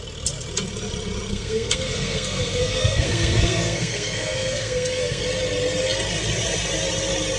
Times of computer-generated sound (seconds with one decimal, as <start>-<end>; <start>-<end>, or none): 1.3-5.2